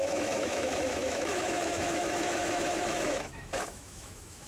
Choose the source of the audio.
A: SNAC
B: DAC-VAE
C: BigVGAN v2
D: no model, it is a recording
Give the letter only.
B